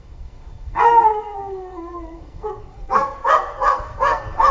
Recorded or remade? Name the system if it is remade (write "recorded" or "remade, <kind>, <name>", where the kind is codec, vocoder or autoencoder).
remade, codec, SNAC